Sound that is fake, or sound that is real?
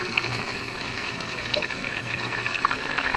fake